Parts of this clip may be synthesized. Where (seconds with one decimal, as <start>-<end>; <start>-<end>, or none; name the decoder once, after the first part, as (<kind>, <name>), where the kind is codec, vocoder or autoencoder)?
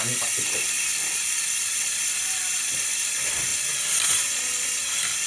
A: none